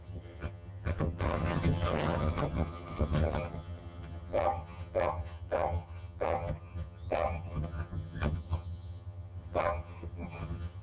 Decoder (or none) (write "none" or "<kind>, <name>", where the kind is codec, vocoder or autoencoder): vocoder, HiFi-GAN